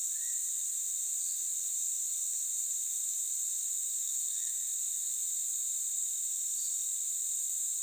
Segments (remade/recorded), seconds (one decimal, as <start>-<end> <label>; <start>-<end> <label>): 0.0-4.0 recorded; 4.0-4.5 remade; 4.5-7.8 recorded